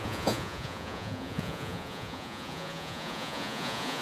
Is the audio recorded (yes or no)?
no